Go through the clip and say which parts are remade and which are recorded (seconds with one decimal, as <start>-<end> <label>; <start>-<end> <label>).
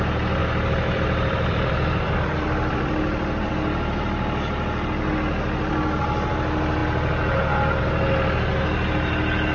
0.0-0.4 recorded; 0.4-3.5 remade; 3.5-9.5 recorded